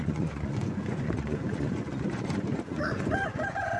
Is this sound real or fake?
fake